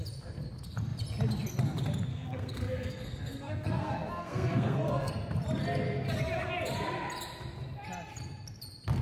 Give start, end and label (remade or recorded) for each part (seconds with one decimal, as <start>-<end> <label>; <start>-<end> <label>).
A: 0.0-2.1 recorded; 2.1-5.1 remade; 5.1-9.0 recorded